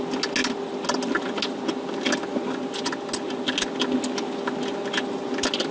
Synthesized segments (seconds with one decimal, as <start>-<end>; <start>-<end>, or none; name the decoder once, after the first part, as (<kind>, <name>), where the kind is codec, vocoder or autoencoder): none